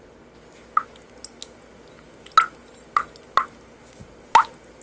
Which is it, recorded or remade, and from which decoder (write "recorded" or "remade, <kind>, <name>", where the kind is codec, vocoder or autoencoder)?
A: recorded